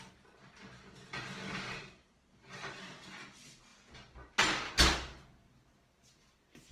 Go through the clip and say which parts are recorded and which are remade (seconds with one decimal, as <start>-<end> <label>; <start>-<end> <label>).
0.0-6.7 recorded